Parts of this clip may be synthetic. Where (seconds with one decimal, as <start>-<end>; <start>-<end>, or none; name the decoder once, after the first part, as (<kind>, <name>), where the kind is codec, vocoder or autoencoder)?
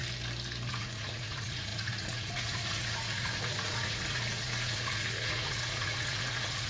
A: 0.7-6.7 (vocoder, Vocos)